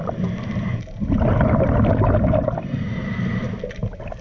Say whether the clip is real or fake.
real